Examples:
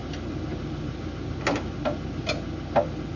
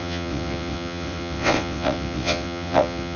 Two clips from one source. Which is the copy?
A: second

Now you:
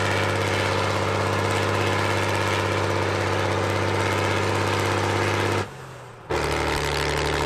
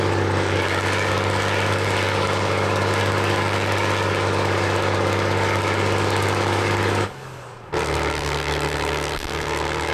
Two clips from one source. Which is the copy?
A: second